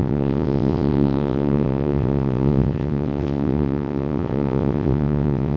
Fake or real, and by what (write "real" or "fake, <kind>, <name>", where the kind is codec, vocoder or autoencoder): fake, vocoder, WaveNeXt